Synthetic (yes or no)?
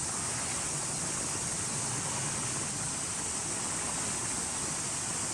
no